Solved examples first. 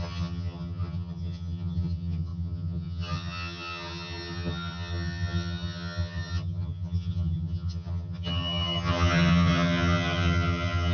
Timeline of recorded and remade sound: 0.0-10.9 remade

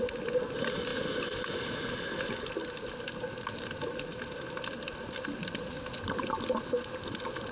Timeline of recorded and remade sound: 0.0-7.5 recorded

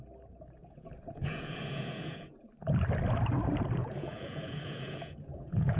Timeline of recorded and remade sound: 0.0-0.6 recorded; 0.6-2.5 remade; 2.5-3.8 recorded; 3.8-5.8 remade